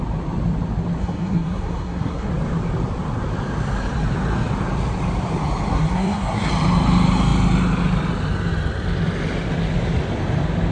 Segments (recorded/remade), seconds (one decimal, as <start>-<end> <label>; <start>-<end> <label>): 0.0-1.0 recorded; 1.0-2.3 remade; 2.3-5.7 recorded; 5.7-6.5 remade; 6.5-10.7 recorded